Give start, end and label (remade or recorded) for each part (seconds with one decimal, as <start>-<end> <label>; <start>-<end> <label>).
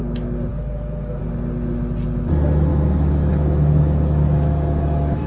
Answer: 0.0-0.5 recorded; 0.5-1.2 remade; 1.2-2.7 recorded; 2.7-5.3 remade